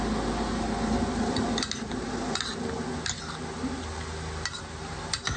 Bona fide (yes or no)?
yes